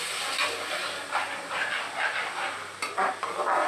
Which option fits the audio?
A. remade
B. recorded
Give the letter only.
B